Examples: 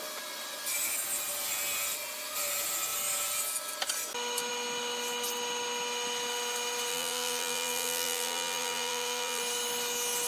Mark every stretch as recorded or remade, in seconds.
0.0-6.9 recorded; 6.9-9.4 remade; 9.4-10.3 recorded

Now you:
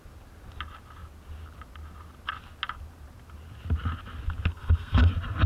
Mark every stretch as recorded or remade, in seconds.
0.0-4.5 recorded; 4.5-5.1 remade; 5.1-5.5 recorded

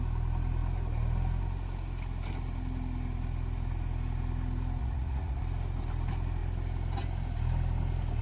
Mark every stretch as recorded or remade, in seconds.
0.0-4.8 recorded; 4.8-5.4 remade; 5.4-8.2 recorded

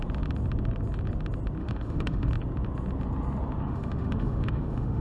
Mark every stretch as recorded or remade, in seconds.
0.0-1.6 recorded; 1.6-2.3 remade; 2.3-3.6 recorded; 3.6-5.0 remade